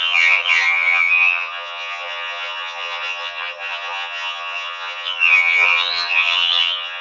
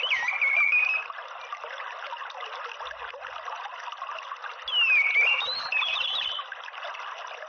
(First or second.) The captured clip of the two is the second